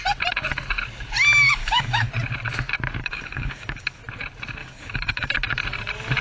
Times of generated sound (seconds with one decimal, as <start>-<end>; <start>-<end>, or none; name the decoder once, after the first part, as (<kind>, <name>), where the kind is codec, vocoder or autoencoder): 1.6-2.1 (codec, DAC); 3.0-4.0; 4.6-5.3